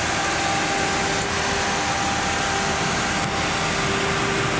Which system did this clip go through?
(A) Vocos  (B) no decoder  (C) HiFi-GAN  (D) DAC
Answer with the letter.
B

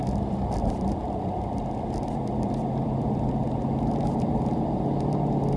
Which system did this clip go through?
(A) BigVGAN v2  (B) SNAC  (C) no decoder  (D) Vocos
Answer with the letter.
A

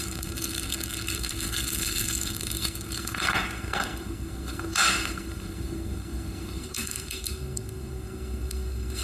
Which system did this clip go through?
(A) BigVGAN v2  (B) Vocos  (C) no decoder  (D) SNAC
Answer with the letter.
D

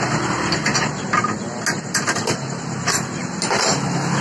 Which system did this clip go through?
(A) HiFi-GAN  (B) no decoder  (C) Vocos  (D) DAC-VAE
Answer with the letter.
B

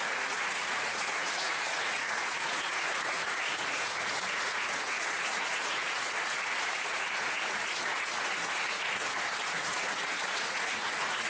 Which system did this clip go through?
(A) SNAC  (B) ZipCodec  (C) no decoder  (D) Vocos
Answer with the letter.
D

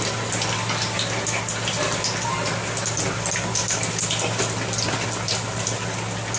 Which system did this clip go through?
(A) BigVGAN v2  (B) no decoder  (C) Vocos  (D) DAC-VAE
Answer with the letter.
B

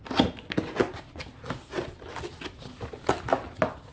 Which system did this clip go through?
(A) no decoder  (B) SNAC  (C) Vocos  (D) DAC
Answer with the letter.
A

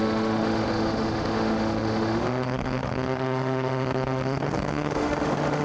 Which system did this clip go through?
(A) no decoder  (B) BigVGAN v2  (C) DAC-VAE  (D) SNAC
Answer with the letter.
C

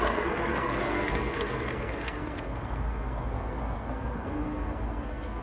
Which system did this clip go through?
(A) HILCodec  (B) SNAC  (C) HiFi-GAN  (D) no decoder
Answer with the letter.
B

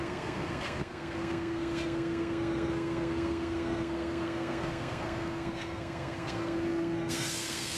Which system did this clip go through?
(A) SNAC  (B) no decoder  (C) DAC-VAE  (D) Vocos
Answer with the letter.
A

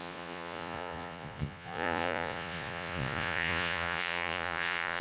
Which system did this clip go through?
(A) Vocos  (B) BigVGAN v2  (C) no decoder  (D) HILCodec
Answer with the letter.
A